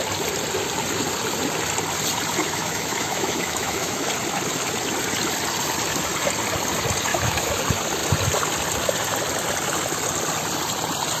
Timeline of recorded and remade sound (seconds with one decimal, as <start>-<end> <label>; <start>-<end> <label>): 0.0-2.4 recorded; 2.4-4.1 remade; 4.1-7.1 recorded; 7.1-7.6 remade; 7.6-11.2 recorded